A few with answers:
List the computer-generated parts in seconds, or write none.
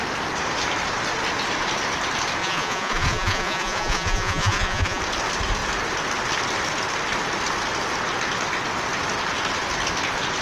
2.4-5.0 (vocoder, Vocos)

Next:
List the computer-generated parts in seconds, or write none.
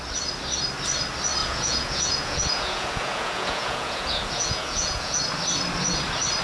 1.4-5.2 (vocoder, Vocos)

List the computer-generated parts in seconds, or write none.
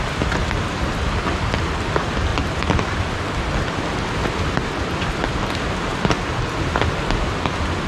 none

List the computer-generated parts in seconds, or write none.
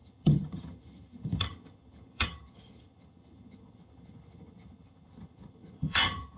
0.0-6.4 (vocoder, HiFi-GAN)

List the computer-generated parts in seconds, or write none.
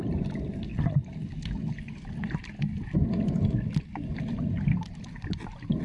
none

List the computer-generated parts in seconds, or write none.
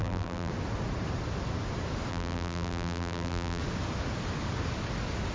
0.0-0.5 (vocoder, BigVGAN v2); 2.1-3.6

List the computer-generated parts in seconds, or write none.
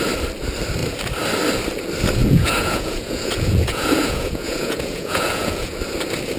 2.2-5.8 (vocoder, Vocos)